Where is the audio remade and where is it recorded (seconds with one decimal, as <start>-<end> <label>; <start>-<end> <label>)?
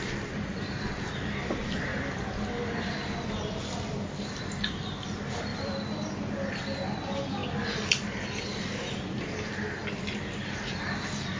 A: 0.0-1.9 recorded; 1.9-4.4 remade; 4.4-5.5 recorded; 5.5-6.1 remade; 6.1-11.4 recorded